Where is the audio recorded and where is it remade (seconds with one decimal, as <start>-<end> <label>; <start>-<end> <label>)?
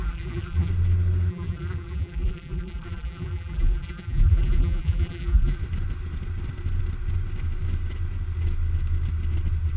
0.0-0.7 remade; 0.7-1.3 recorded; 1.3-5.6 remade; 5.6-9.8 recorded